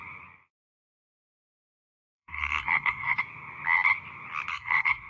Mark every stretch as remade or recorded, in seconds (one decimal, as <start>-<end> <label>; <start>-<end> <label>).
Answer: 0.0-2.0 recorded; 2.0-3.2 remade; 3.2-4.5 recorded; 4.5-5.1 remade